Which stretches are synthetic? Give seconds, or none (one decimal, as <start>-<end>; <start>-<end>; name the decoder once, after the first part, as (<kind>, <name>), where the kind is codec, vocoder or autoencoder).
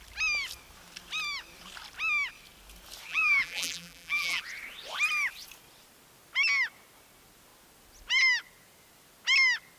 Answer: 3.1-4.4 (vocoder, BigVGAN v2)